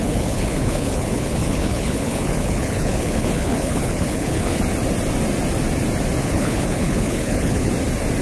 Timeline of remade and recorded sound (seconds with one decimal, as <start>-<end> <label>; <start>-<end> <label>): 0.0-4.6 remade; 4.6-6.2 recorded; 6.2-7.7 remade; 7.7-8.2 recorded